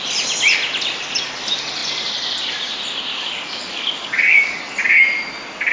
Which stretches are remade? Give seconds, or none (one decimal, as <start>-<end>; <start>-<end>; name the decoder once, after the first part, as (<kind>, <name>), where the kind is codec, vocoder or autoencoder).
3.1-4.6 (codec, DAC)